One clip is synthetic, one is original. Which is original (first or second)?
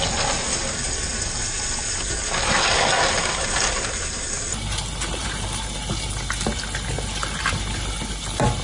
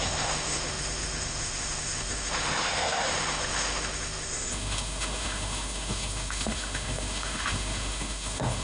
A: first